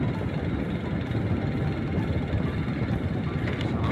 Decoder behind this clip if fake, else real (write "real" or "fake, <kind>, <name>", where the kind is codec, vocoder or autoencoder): real